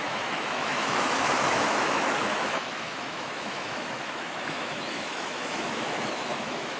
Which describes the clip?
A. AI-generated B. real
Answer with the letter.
A